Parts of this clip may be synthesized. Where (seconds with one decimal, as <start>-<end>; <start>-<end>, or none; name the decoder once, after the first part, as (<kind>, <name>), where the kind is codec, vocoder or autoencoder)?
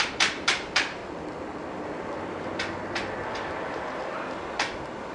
0.0-1.0 (vocoder, BigVGAN v2); 3.6-4.0